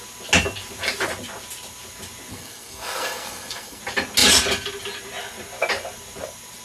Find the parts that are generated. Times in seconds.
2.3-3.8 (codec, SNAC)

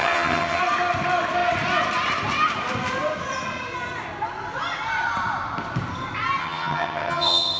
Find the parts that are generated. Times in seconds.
0.0-0.6 (vocoder, HiFi-GAN); 6.4-7.6

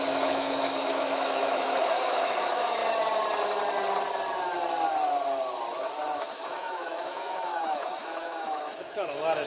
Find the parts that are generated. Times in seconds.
0.0-2.8 (autoencoder, DAC-VAE); 6.2-9.5

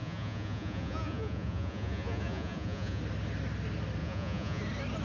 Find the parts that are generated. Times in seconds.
0.0-3.0 (vocoder, Vocos); 4.0-4.6